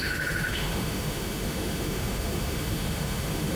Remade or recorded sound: remade